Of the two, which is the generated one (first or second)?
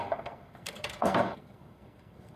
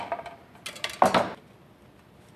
first